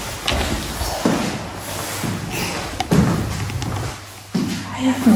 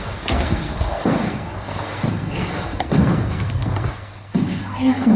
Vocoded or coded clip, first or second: second